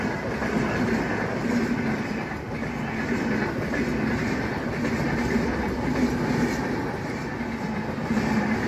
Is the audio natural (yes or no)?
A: yes